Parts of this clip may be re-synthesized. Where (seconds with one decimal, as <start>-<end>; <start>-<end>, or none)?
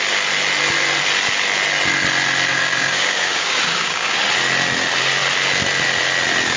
2.5-4.2